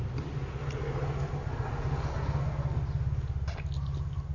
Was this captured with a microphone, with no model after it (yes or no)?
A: yes